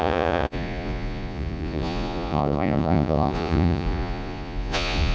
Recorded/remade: remade